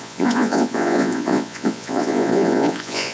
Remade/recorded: remade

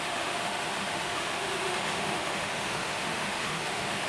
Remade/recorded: remade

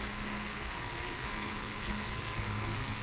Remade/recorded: remade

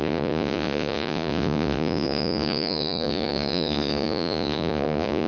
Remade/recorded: remade